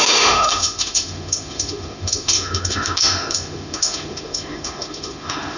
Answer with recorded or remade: remade